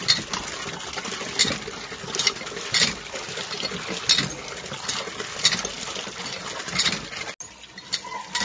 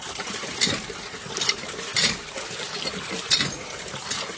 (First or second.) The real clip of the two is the first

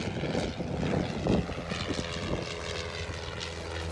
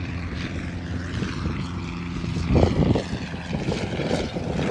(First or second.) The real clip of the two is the first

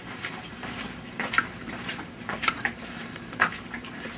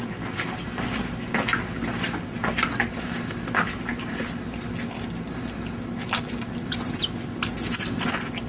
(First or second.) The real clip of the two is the second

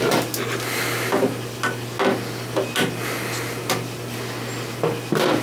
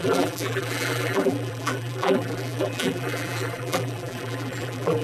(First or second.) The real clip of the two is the first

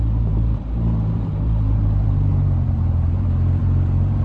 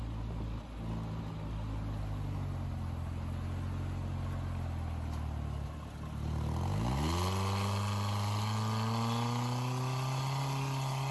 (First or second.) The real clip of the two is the second